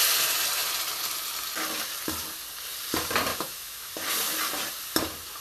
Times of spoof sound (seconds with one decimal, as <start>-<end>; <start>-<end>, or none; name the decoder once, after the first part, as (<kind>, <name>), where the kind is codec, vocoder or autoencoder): 3.3-3.9 (autoencoder, DAC-VAE)